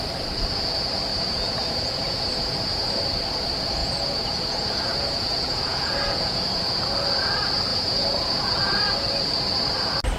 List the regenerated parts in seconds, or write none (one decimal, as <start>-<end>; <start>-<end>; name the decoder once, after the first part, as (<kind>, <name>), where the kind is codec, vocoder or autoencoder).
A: 1.1-2.9 (vocoder, Vocos); 3.8-6.6; 7.7-8.5